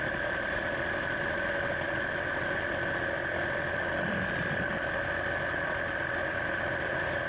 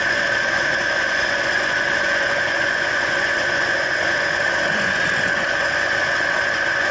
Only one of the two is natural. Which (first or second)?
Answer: first